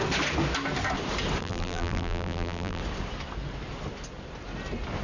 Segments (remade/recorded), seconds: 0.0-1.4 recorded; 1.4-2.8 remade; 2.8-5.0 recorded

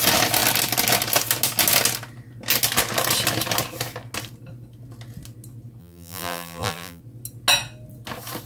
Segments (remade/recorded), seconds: 0.0-5.8 recorded; 5.8-7.0 remade; 7.0-8.5 recorded

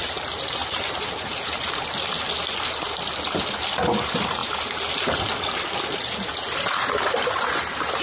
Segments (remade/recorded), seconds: 0.0-8.0 recorded